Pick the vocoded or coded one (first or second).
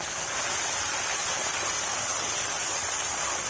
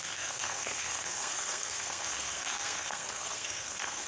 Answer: second